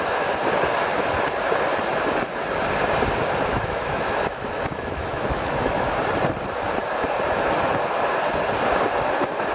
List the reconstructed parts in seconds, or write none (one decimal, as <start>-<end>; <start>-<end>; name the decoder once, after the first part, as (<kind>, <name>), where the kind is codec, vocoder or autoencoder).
3.5-6.0 (autoencoder, DAC-VAE)